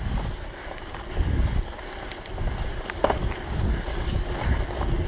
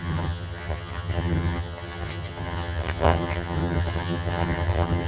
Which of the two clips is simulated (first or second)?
second